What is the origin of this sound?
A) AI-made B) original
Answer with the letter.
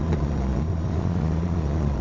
A